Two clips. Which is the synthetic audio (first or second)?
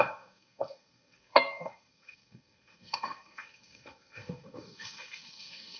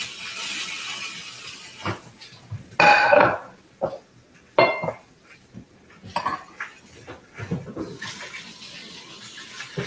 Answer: first